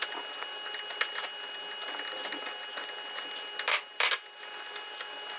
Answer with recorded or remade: recorded